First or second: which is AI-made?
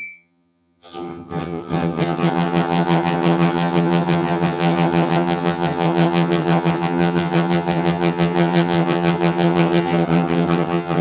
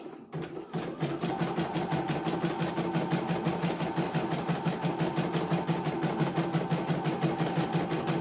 first